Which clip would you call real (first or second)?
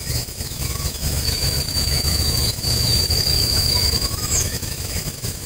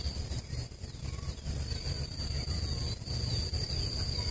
second